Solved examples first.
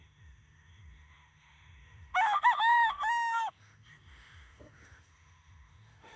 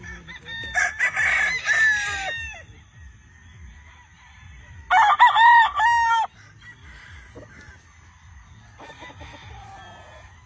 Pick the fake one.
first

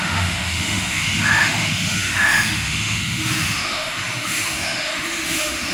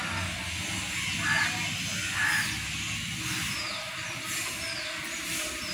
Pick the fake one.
first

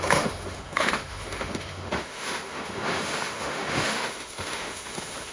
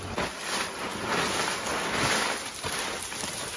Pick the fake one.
first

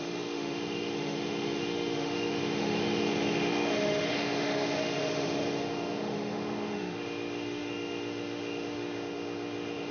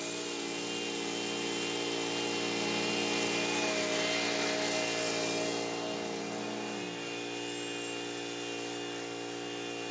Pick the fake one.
first